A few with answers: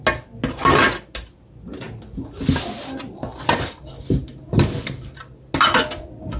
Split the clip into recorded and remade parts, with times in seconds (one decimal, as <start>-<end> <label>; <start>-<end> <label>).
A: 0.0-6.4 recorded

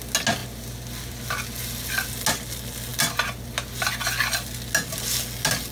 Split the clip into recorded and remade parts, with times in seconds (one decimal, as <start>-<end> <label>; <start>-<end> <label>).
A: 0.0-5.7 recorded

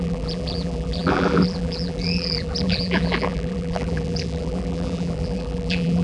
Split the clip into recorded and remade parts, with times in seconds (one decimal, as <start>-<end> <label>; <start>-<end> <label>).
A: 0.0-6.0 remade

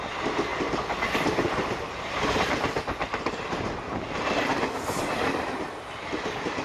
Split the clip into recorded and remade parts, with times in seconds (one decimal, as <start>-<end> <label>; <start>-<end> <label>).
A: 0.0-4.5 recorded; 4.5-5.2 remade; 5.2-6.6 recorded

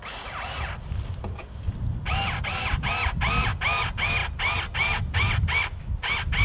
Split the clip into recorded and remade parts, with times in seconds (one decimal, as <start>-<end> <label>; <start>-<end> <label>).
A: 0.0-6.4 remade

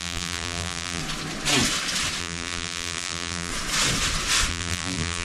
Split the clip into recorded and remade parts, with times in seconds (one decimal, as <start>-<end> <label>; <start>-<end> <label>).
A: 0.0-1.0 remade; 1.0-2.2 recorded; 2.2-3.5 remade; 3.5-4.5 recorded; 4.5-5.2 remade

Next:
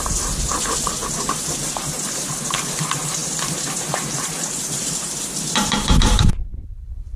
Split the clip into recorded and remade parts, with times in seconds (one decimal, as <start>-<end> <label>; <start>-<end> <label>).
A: 0.0-3.2 recorded; 3.2-7.2 remade